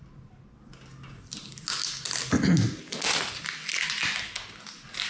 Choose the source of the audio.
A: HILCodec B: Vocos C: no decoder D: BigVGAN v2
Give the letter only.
C